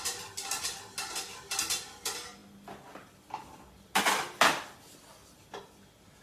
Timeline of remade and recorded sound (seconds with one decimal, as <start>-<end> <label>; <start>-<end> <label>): 0.0-6.2 recorded